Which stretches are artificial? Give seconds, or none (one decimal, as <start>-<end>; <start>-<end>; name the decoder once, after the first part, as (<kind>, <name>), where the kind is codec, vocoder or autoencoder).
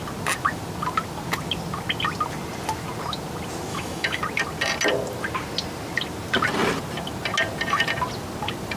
3.7-4.2 (autoencoder, DAC-VAE)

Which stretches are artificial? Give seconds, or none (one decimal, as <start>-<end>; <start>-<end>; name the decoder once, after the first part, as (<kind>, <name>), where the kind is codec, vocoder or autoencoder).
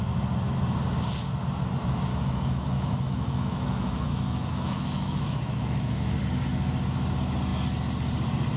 2.1-6.2 (autoencoder, DAC-VAE)